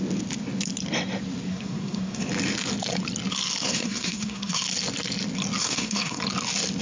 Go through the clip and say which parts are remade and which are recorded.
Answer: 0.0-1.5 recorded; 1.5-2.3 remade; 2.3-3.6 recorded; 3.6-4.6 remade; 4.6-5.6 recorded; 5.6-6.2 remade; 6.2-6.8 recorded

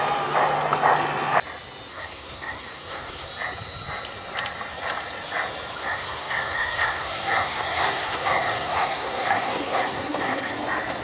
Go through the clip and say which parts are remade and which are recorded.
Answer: 0.0-1.9 recorded; 1.9-3.3 remade; 3.3-5.8 recorded; 5.8-10.5 remade; 10.5-11.0 recorded

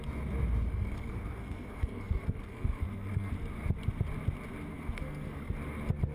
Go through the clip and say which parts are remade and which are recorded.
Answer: 0.0-0.7 recorded; 0.7-3.3 remade; 3.3-4.7 recorded; 4.7-5.5 remade; 5.5-6.1 recorded

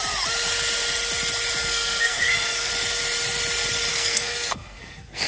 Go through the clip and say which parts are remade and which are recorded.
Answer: 0.0-1.6 recorded; 1.6-2.7 remade; 2.7-3.9 recorded; 3.9-5.3 remade

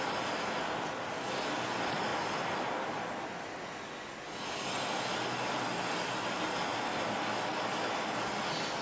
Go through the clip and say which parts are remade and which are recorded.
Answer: 0.0-8.8 recorded

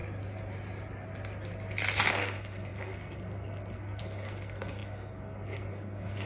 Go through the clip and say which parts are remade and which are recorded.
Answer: 0.0-2.1 recorded; 2.1-6.3 remade

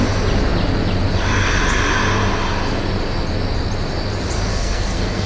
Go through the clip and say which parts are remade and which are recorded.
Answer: 0.0-4.5 recorded; 4.5-5.3 remade